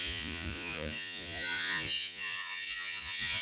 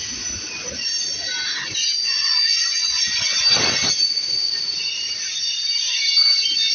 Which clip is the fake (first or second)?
first